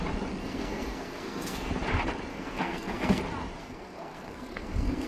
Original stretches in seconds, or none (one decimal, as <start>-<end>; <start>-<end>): 0.0-0.4; 1.7-2.3; 3.2-3.6